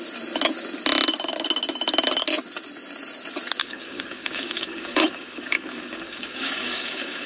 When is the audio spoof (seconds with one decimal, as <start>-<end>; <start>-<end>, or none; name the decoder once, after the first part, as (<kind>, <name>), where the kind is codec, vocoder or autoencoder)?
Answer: 3.6-7.3 (codec, DAC)